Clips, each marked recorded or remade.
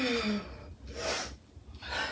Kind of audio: recorded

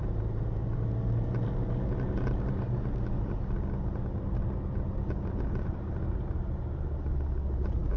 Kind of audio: recorded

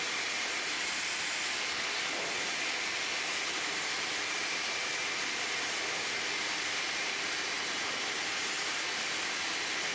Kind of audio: recorded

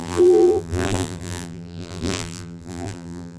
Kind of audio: remade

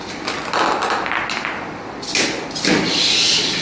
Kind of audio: recorded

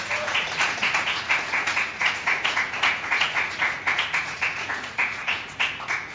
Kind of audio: remade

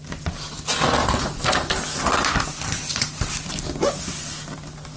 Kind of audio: recorded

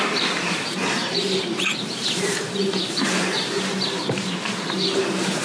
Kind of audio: remade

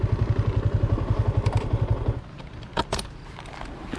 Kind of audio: recorded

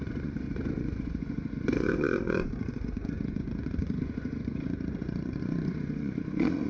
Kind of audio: remade